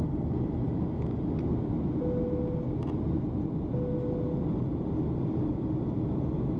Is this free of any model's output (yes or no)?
yes